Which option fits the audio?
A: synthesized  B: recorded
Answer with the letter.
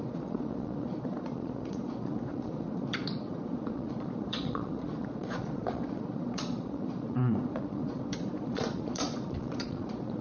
A